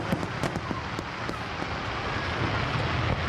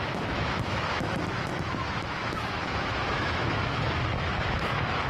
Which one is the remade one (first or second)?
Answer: second